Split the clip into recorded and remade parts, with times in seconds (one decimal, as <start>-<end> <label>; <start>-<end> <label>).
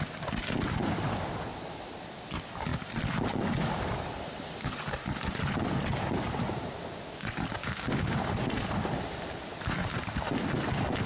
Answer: 0.0-7.6 recorded; 7.6-8.2 remade; 8.2-11.1 recorded